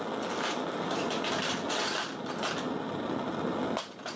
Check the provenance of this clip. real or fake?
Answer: real